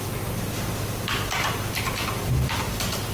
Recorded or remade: recorded